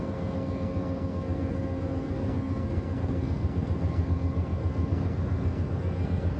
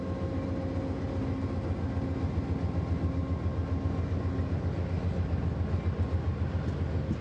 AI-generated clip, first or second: first